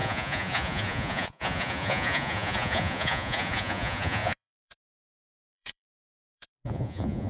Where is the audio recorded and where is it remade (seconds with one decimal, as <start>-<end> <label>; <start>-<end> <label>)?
0.0-7.3 remade